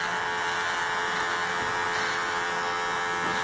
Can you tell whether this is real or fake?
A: real